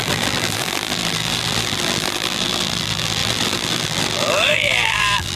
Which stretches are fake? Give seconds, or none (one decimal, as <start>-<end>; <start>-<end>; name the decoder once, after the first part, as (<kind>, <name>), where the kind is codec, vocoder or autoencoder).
0.0-5.4 (vocoder, BigVGAN v2)